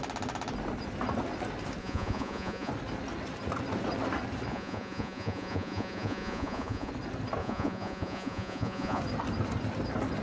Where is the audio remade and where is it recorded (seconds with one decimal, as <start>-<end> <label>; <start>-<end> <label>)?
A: 0.0-1.8 recorded; 1.8-2.7 remade; 2.7-4.5 recorded; 4.5-6.9 remade; 6.9-7.4 recorded; 7.4-9.0 remade; 9.0-10.2 recorded